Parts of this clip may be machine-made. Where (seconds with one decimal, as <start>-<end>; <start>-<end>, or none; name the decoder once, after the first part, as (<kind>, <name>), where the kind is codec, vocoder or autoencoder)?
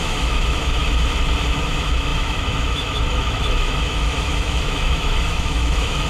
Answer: 0.0-0.8 (autoencoder, DAC-VAE); 1.6-6.1